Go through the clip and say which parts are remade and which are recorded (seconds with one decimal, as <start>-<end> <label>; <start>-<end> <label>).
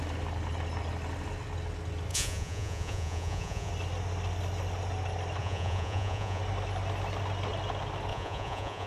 0.0-2.1 recorded; 2.1-3.7 remade; 3.7-5.4 recorded; 5.4-6.4 remade; 6.4-8.1 recorded; 8.1-8.9 remade